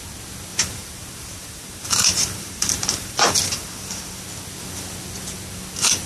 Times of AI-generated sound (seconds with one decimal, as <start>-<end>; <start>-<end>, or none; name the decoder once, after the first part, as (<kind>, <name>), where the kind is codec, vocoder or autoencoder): 0.5-4.2 (vocoder, BigVGAN v2)